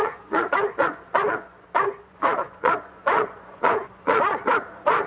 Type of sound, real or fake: fake